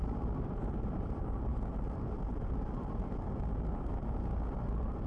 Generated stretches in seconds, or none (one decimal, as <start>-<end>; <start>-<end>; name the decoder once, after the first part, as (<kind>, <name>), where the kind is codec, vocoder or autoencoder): none